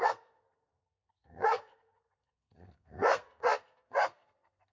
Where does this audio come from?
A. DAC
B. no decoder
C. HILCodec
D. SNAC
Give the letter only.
D